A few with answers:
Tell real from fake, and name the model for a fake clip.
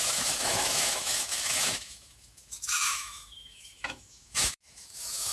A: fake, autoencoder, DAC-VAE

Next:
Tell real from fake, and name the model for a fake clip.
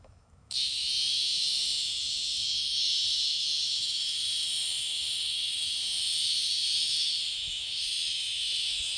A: fake, autoencoder, DAC-VAE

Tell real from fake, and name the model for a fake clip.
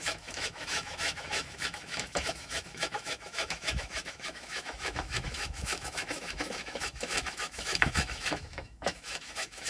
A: fake, autoencoder, DAC-VAE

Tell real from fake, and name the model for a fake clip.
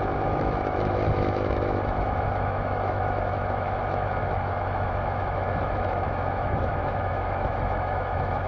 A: fake, autoencoder, DAC-VAE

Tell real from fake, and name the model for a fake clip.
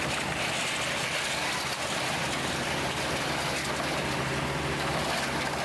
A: real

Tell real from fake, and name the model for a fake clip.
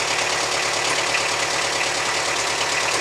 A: real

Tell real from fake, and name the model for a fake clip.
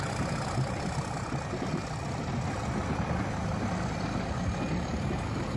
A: real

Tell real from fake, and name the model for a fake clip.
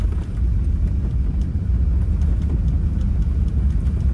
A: real